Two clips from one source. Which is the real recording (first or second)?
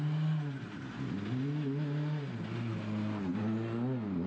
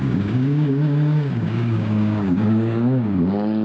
first